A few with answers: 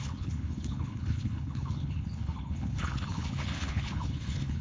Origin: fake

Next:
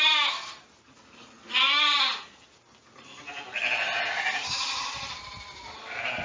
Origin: real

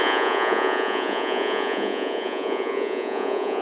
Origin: fake